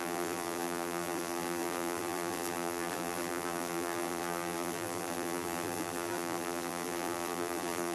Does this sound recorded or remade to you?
remade